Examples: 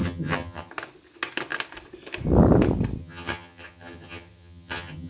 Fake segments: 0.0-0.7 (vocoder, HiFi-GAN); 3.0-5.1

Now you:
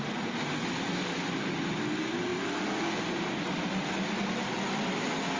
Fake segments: none

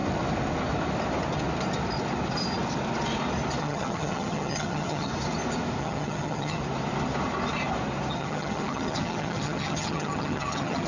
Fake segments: 3.6-5.1 (vocoder, HiFi-GAN); 5.8-6.6; 8.1-10.9

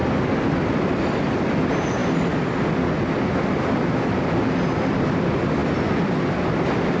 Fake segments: none